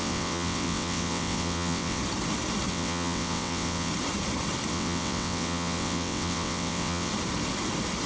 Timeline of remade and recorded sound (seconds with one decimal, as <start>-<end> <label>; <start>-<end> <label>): 0.0-2.0 remade; 2.0-2.7 recorded; 2.7-3.9 remade; 3.9-4.7 recorded; 4.7-7.1 remade; 7.1-8.1 recorded